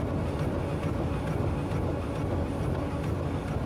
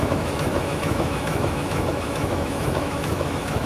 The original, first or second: first